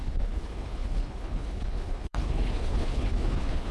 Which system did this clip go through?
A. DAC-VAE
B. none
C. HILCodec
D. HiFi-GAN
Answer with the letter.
C